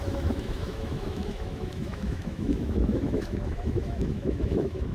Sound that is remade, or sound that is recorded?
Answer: remade